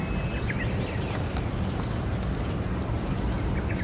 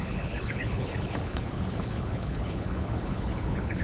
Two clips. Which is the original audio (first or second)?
first